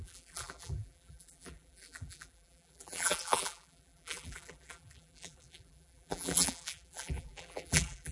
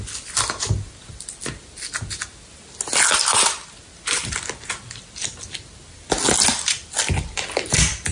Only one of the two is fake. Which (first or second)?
first